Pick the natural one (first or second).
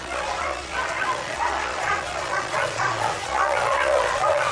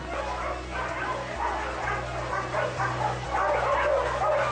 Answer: second